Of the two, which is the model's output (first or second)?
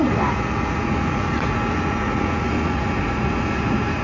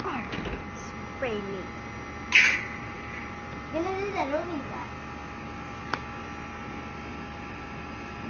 first